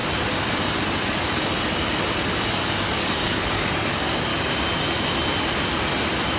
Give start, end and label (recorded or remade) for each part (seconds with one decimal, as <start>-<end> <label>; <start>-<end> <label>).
0.0-2.5 recorded; 2.5-4.3 remade; 4.3-6.4 recorded